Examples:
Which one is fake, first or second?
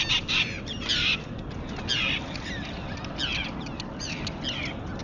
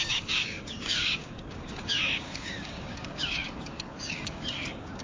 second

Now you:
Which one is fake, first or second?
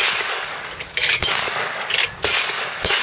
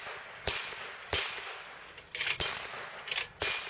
first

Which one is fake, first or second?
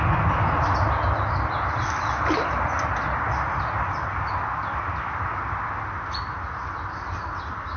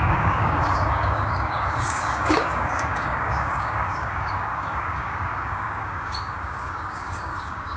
second